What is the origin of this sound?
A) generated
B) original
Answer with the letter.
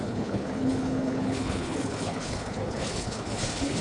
A